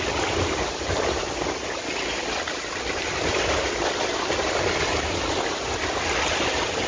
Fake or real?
real